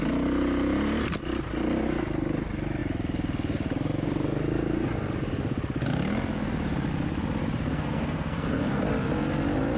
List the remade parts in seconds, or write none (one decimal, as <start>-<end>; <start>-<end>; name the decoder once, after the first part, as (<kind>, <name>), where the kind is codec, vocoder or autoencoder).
7.6-8.8 (codec, SNAC)